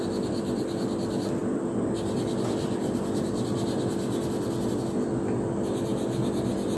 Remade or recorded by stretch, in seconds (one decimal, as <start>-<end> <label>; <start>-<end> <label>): 0.0-1.4 recorded; 1.4-3.9 remade; 3.9-6.8 recorded